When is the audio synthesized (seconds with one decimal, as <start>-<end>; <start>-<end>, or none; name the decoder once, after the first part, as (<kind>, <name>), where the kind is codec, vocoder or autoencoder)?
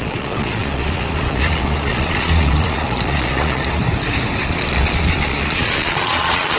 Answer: 0.0-3.8 (vocoder, Vocos); 4.4-6.6